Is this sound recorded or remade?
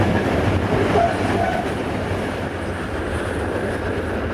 recorded